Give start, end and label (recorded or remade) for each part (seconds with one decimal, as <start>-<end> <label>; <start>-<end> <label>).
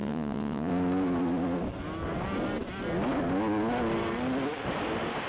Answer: 0.0-0.7 remade; 0.7-5.3 recorded